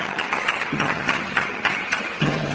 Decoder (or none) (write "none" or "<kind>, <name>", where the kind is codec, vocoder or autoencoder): vocoder, HiFi-GAN